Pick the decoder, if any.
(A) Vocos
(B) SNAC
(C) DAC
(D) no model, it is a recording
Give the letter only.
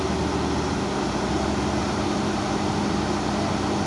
D